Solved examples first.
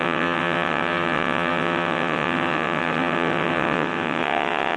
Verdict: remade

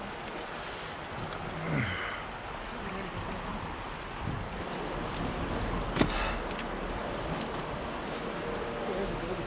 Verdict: recorded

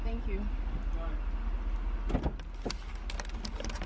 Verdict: recorded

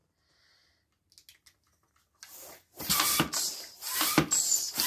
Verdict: recorded